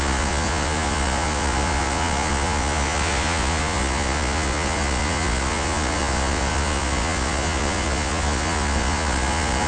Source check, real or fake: fake